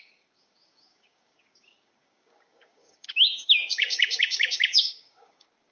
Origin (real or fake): fake